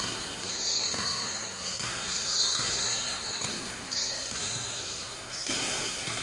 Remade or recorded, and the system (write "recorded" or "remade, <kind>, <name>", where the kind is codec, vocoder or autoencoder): remade, codec, SNAC